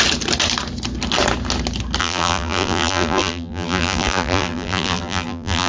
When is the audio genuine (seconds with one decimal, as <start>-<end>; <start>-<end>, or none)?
0.0-2.0